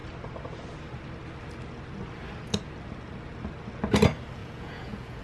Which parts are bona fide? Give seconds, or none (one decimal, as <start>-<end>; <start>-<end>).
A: 0.0-4.4